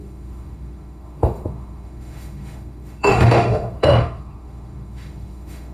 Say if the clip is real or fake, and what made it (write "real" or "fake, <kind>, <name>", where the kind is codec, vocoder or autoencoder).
fake, autoencoder, DAC-VAE